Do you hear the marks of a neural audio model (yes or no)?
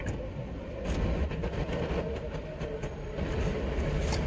no